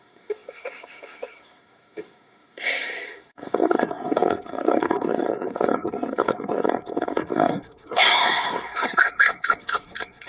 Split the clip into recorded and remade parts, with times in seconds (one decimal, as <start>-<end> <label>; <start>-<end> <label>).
0.0-10.3 remade